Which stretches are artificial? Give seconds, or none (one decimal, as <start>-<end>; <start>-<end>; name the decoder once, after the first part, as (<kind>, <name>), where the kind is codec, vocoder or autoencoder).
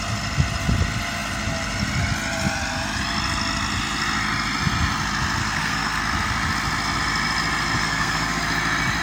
5.4-6.0 (codec, SNAC); 7.8-8.4